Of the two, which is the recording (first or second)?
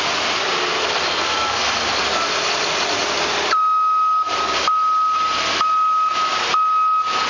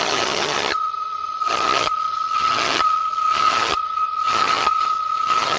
first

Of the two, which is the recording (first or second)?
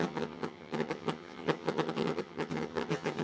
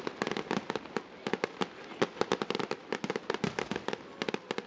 second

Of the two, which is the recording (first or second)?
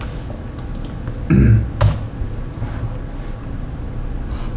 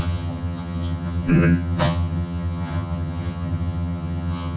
first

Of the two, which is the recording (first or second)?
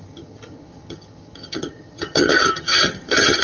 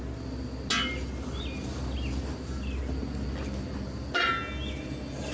second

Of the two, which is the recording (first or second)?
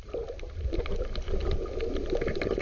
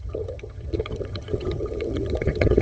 first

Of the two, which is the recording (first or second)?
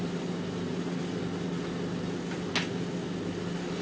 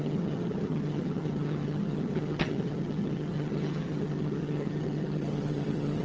first